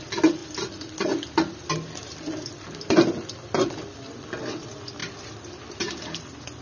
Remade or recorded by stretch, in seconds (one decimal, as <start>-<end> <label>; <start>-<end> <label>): 0.0-6.6 recorded